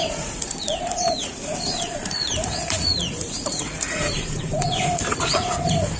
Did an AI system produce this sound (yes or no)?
yes